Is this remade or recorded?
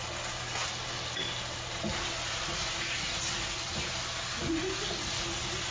recorded